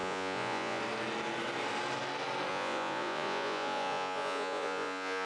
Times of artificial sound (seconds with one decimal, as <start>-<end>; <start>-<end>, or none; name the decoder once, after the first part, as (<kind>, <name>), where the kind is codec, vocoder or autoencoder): 0.0-0.8 (vocoder, Vocos); 2.5-5.3